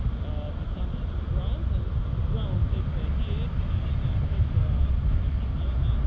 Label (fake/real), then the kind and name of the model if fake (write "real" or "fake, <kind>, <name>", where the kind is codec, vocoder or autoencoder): real